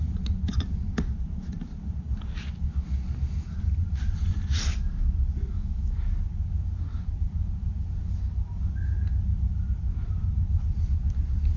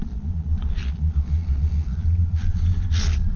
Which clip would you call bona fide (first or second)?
first